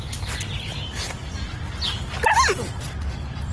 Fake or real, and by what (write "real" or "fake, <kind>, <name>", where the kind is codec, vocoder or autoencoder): real